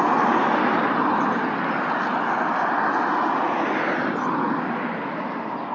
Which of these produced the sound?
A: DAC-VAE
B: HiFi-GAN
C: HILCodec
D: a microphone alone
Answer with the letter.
D